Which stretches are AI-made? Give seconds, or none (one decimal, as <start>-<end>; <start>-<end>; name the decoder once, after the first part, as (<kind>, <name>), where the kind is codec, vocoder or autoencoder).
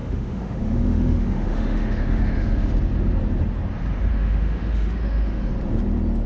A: 0.0-2.7 (autoencoder, DAC-VAE); 4.1-5.5